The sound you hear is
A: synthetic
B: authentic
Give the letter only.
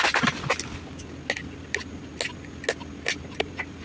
B